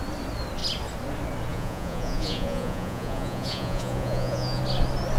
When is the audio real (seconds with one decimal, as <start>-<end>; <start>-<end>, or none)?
0.0-1.5; 4.6-5.2